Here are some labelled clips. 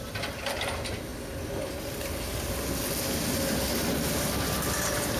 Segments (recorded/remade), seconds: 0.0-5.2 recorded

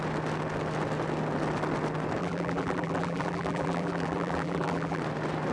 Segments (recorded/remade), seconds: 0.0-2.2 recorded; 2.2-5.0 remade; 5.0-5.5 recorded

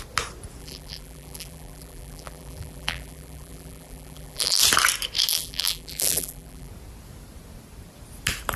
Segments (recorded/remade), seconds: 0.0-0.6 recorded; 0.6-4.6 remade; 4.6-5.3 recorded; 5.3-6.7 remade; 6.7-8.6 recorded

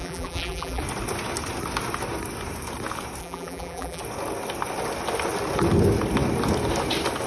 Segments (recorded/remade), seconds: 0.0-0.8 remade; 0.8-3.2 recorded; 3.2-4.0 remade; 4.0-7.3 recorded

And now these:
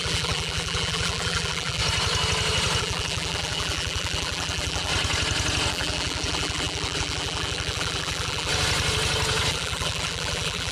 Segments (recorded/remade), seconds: 0.0-1.8 remade; 1.8-2.8 recorded; 2.8-4.9 remade; 4.9-5.7 recorded; 5.7-8.5 remade; 8.5-9.5 recorded; 9.5-10.7 remade